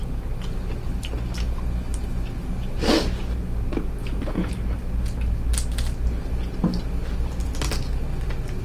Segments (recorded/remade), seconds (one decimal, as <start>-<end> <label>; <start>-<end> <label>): 0.0-4.0 recorded; 4.0-4.5 remade; 4.5-8.6 recorded